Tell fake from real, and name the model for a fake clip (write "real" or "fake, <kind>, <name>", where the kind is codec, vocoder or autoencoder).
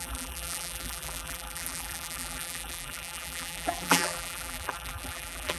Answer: fake, vocoder, BigVGAN v2